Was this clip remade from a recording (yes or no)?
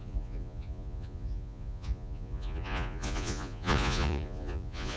yes